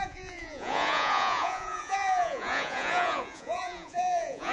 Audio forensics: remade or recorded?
remade